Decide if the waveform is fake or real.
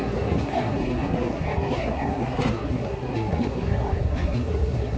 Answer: fake